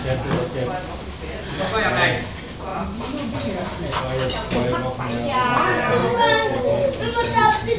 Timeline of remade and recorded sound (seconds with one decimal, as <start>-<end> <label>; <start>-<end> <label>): 0.0-2.7 recorded; 2.7-4.0 remade; 4.0-6.0 recorded; 6.0-6.6 remade; 6.6-7.8 recorded